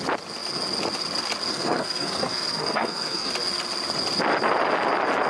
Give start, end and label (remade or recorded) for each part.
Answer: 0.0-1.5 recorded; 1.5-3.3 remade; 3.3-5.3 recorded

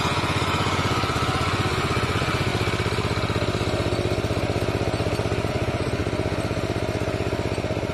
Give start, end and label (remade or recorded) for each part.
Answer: 0.0-2.5 remade; 2.5-5.5 recorded; 5.5-6.0 remade; 6.0-7.9 recorded

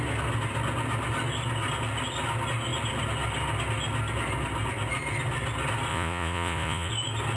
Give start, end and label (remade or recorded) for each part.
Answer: 0.0-5.9 recorded; 5.9-6.9 remade; 6.9-7.4 recorded

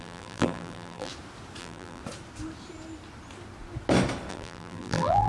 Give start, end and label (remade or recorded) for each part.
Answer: 0.0-1.1 remade; 1.1-1.6 recorded; 1.6-2.0 remade; 2.0-4.3 recorded; 4.3-5.3 remade

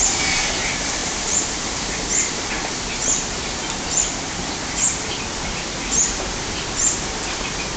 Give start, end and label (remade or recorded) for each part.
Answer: 0.0-1.0 recorded; 1.0-2.0 remade; 2.0-3.0 recorded; 3.0-5.1 remade; 5.1-7.8 recorded

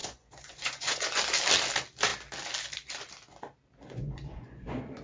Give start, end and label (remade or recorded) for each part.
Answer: 0.0-1.2 remade; 1.2-3.8 recorded; 3.8-5.0 remade

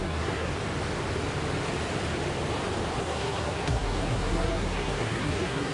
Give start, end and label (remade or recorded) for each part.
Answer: 0.0-0.5 remade; 0.5-3.0 recorded; 3.0-5.7 remade